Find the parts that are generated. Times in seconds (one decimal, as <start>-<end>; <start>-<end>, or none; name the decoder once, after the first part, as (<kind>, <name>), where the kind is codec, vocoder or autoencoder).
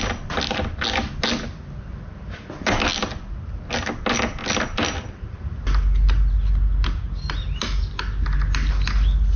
none